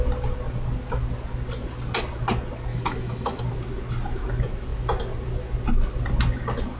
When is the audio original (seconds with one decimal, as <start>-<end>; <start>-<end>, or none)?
0.0-2.7; 3.4-6.8